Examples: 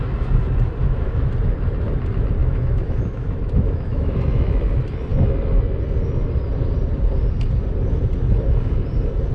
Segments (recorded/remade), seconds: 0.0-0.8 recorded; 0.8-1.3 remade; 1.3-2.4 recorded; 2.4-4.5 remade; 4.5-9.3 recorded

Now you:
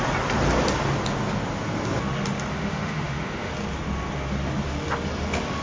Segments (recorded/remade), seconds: 0.0-2.5 recorded; 2.5-3.5 remade; 3.5-5.6 recorded

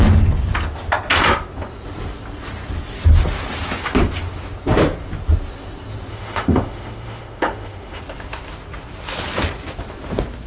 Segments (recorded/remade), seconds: 0.0-6.1 recorded; 6.1-8.0 remade; 8.0-10.5 recorded